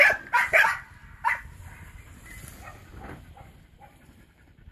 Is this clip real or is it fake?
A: real